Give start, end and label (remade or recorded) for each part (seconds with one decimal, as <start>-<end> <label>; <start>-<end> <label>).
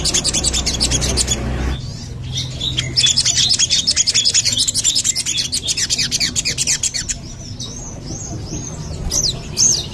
0.0-9.9 recorded